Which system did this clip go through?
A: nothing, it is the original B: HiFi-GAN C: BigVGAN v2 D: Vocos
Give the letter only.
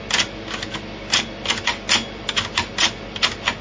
A